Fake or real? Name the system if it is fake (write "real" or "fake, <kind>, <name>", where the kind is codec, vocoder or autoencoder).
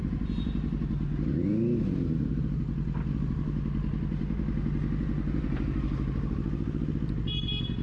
real